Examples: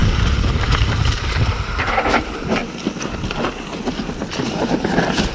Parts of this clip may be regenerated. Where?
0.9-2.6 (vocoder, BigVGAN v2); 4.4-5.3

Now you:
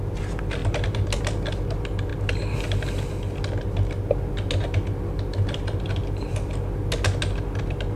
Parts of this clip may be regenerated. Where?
none

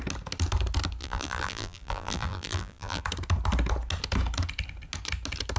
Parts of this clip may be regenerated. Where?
1.0-3.0 (vocoder, BigVGAN v2)

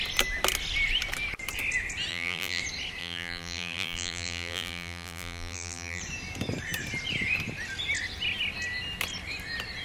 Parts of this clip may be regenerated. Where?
2.1-2.6 (vocoder, BigVGAN v2); 3.0-6.0

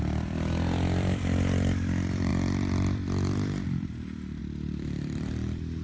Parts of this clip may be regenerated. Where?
0.0-5.8 (vocoder, BigVGAN v2)